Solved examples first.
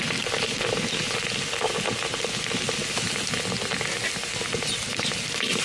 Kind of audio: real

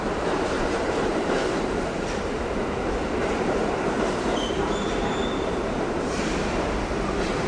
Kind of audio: fake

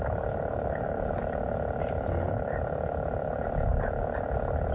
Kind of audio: real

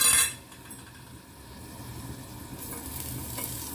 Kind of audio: real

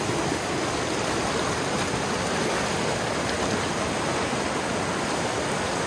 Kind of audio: real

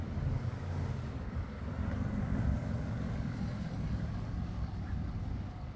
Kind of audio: fake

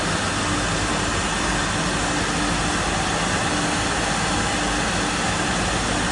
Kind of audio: real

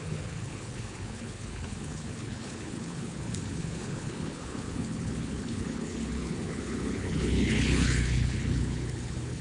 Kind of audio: fake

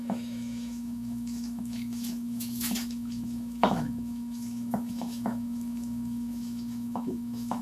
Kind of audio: fake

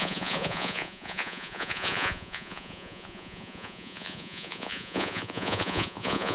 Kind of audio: fake